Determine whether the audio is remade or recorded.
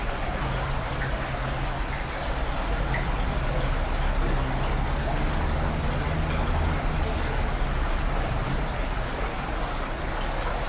recorded